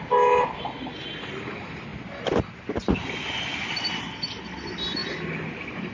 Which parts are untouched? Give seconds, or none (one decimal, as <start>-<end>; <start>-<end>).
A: 0.0-5.9